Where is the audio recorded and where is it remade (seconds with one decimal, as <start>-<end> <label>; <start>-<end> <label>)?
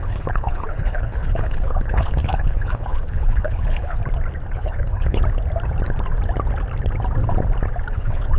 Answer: 0.0-4.0 remade; 4.0-4.5 recorded; 4.5-5.2 remade; 5.2-7.9 recorded; 7.9-8.4 remade